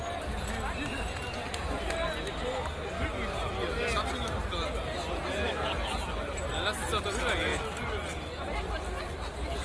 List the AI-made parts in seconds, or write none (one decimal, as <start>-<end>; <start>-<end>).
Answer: none

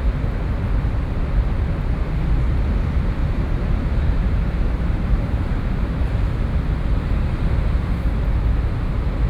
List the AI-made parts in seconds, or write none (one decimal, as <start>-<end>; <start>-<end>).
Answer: 3.2-6.1

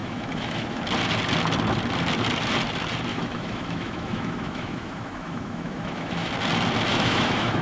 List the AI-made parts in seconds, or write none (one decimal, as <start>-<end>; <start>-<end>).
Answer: 0.0-0.8; 3.1-6.3; 6.9-7.6

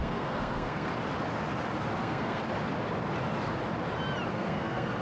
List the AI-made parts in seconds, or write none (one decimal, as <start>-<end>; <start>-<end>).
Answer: 0.0-0.9; 2.0-2.4; 4.3-5.0

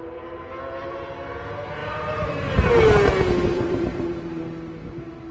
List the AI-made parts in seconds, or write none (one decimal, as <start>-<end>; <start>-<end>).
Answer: 1.8-2.7; 3.5-4.5

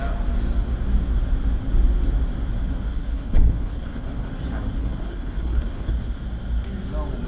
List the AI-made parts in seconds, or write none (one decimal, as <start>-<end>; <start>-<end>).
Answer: 2.9-4.3; 4.8-5.9

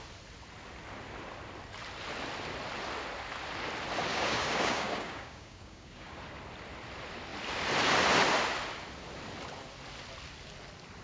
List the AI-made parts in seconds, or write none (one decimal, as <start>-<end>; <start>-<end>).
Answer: 4.1-6.2